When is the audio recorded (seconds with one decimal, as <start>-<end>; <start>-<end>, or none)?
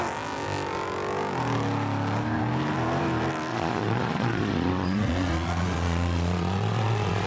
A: 0.0-3.5